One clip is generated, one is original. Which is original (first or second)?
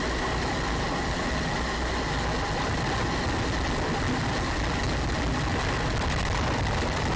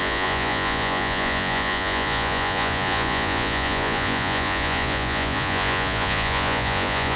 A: first